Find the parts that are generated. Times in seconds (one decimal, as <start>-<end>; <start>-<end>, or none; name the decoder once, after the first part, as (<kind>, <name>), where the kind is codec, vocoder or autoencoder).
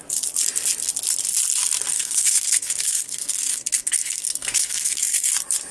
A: 1.9-5.3 (codec, SNAC)